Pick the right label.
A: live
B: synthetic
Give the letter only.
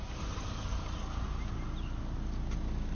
A